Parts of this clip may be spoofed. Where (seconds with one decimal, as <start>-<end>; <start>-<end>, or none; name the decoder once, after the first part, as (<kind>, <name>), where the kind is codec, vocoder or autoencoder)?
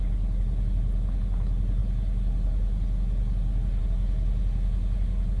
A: none